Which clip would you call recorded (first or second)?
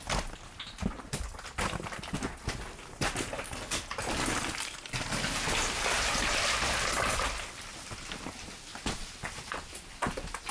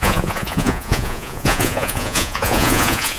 first